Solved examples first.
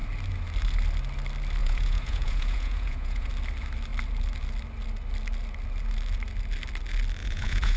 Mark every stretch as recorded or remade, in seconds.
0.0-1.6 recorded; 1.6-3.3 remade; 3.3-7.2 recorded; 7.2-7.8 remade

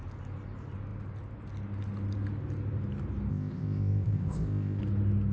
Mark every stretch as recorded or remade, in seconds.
0.0-3.3 recorded; 3.3-4.8 remade; 4.8-5.3 recorded